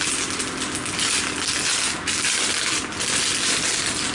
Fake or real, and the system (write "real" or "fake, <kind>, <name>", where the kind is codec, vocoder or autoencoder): real